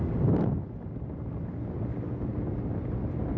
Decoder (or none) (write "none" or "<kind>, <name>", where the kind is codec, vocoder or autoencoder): none